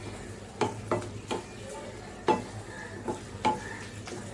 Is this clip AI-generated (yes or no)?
no